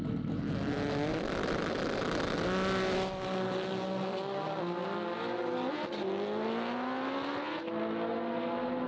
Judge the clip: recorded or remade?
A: recorded